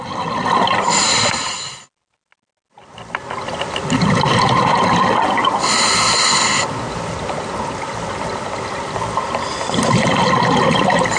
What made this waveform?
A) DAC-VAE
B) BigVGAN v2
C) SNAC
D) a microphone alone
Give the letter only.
D